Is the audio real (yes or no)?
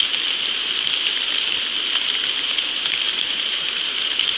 yes